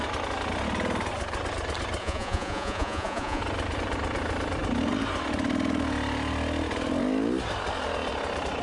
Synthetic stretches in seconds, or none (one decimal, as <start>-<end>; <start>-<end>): 2.0-3.4